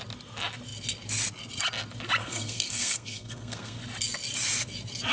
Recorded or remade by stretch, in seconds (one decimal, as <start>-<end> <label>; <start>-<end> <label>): 0.0-2.2 recorded; 2.2-3.8 remade; 3.8-5.1 recorded